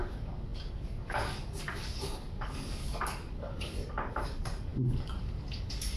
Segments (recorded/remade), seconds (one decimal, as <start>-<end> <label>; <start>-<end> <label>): 0.0-6.0 remade